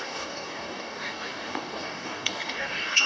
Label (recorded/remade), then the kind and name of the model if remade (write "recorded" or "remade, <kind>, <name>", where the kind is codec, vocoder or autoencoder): remade, codec, DAC